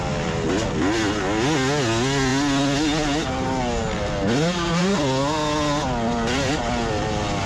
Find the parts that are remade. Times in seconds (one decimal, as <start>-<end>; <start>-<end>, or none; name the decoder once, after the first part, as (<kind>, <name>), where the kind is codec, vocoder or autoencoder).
none